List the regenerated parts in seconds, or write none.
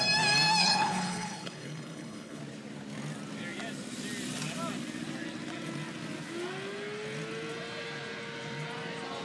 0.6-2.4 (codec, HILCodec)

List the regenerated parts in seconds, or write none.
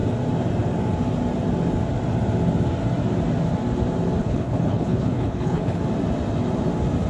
4.2-5.8 (codec, HILCodec)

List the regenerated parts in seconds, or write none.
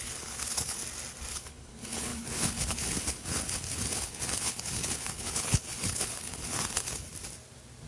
0.0-0.8 (codec, HILCodec); 1.3-7.1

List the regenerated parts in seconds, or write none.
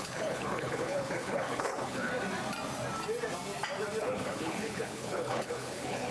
0.0-2.1 (codec, HILCodec); 4.0-6.1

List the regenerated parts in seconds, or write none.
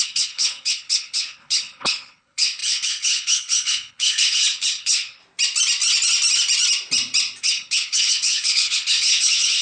0.0-5.2 (codec, HILCodec); 7.4-9.6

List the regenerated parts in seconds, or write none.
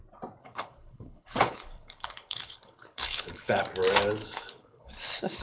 0.4-3.6 (codec, HILCodec); 4.2-5.4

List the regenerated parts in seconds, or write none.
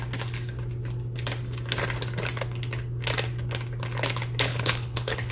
4.5-5.3 (codec, HILCodec)